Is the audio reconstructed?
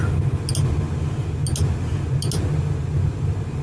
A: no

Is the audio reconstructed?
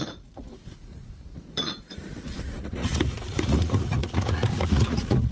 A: yes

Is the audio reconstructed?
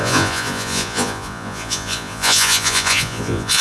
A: yes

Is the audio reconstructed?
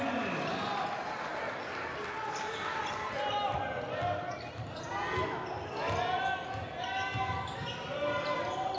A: no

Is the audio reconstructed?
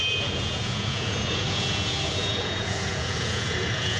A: yes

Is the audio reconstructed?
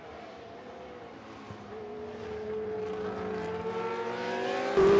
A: no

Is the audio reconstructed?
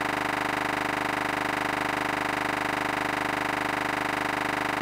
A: no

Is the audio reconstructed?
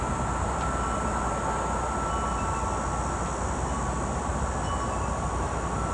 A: no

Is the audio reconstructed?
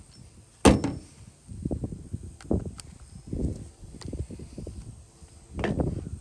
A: no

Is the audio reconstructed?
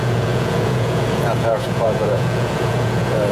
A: yes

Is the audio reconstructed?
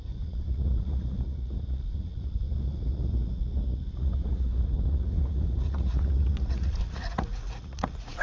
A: yes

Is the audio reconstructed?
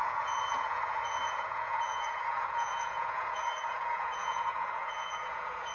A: yes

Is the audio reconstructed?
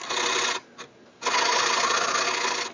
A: no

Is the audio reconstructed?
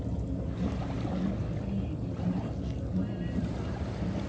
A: no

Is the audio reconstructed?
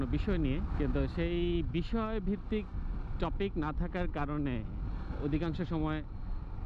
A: no